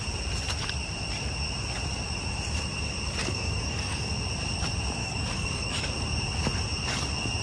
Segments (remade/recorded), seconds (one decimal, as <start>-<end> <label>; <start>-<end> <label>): 0.0-3.2 recorded; 3.2-4.1 remade; 4.1-5.0 recorded; 5.0-5.9 remade; 5.9-7.4 recorded